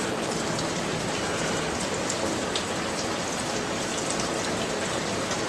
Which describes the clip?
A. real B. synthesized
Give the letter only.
A